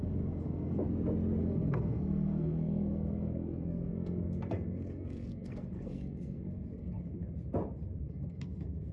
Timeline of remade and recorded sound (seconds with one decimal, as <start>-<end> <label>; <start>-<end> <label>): 0.0-0.8 remade; 0.8-1.4 recorded; 1.4-7.2 remade; 7.2-8.0 recorded; 8.0-8.9 remade